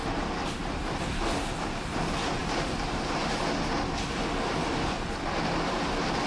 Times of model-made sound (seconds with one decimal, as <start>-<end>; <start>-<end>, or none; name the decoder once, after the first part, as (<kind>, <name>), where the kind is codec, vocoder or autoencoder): none